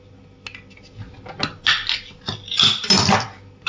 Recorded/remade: recorded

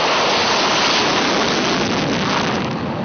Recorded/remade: recorded